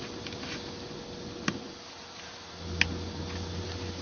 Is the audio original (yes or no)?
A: yes